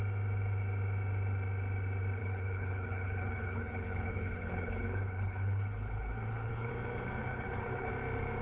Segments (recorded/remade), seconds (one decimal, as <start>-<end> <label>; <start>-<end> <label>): 0.0-2.2 recorded; 2.2-6.7 remade; 6.7-7.2 recorded; 7.2-7.9 remade; 7.9-8.4 recorded